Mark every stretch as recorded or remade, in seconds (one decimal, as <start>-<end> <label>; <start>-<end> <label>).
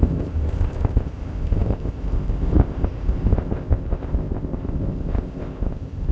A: 0.0-6.1 remade